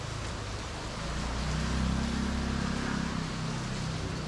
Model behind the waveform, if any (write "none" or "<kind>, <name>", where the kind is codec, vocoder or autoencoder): none